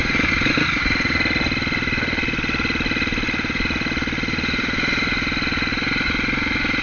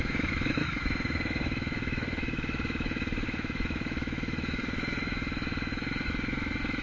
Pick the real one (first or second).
first